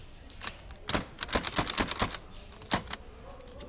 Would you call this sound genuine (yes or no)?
yes